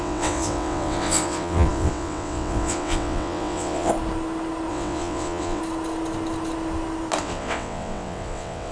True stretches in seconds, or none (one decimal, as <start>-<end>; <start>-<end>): 3.9-4.7; 5.6-7.2